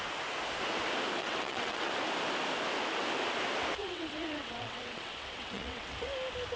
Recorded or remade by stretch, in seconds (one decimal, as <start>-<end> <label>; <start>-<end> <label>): 0.0-1.2 recorded; 1.2-1.9 remade; 1.9-3.8 recorded; 3.8-6.1 remade; 6.1-6.6 recorded